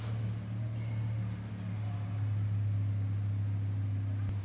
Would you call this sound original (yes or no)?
yes